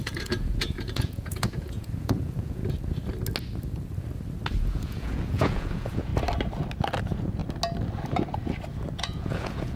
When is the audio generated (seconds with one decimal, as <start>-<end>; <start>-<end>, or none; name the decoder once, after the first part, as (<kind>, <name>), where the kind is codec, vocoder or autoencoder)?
0.0-2.6 (vocoder, Vocos); 4.6-6.1; 7.0-7.4; 9.0-9.8